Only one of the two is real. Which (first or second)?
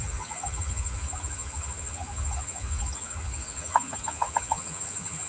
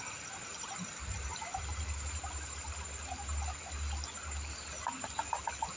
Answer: second